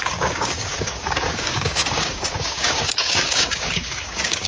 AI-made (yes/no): yes